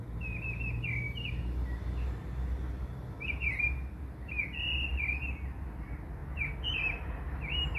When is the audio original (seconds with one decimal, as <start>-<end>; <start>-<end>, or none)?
0.0-7.8

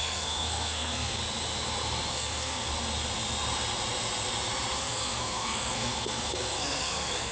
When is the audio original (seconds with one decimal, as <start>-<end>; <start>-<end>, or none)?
1.2-2.1; 2.7-4.8

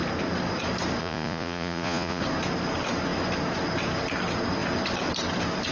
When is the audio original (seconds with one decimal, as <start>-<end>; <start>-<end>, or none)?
0.0-1.0; 2.2-5.7

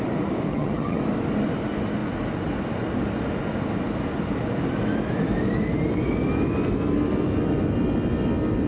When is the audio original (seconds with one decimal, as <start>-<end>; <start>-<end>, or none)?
0.0-0.5; 1.0-8.7

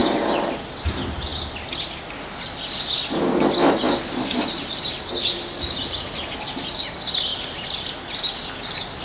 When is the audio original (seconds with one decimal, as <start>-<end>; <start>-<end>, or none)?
0.6-9.0

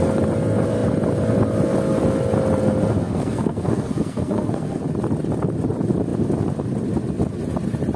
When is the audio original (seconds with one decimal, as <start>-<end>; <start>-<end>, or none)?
0.0-3.0; 4.8-8.0